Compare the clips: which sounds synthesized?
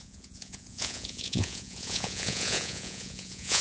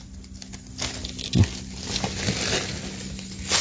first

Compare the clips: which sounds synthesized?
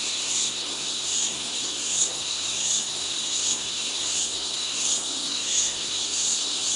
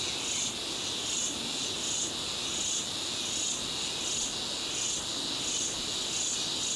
first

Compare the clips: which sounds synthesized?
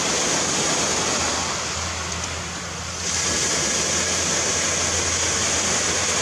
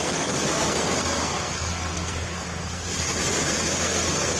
second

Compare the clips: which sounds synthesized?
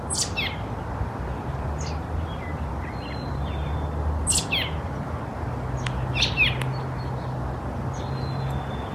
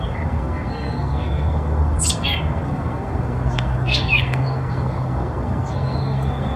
second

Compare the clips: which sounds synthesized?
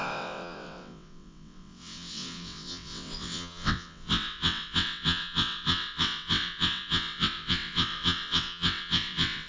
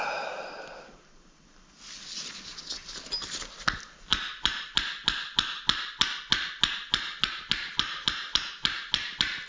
first